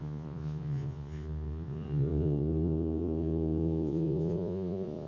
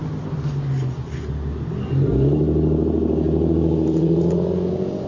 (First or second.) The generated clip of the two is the first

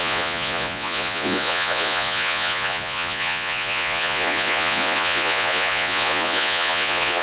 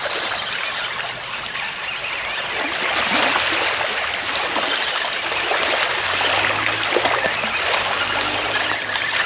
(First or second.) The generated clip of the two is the first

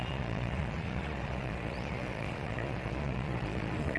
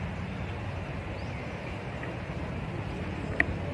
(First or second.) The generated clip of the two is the first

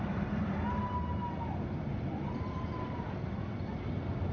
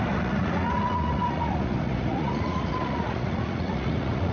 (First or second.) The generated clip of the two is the second